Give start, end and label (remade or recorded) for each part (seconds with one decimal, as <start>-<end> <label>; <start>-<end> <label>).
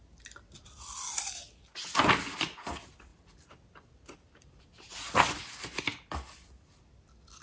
0.0-3.1 recorded; 3.1-5.3 remade; 5.3-5.9 recorded; 5.9-6.9 remade; 6.9-7.4 recorded